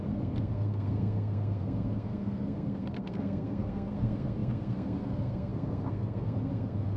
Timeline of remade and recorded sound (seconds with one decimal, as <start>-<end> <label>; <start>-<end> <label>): 0.0-7.0 remade